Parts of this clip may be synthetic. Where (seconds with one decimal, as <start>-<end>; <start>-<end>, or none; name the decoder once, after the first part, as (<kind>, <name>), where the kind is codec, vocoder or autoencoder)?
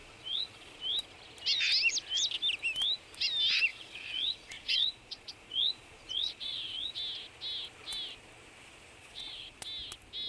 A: 0.0-0.8 (vocoder, Vocos); 3.7-7.0; 9.0-9.6